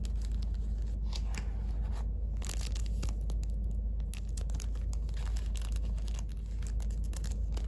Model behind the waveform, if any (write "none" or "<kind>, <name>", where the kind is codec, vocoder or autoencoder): none